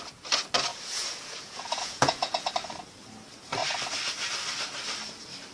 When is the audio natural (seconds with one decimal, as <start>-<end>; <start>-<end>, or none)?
0.0-0.7; 2.5-5.5